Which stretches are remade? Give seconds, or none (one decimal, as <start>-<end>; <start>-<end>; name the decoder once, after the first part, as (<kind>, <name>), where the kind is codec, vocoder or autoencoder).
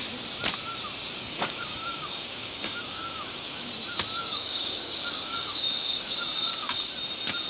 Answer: 1.2-3.7 (codec, DAC); 4.2-6.9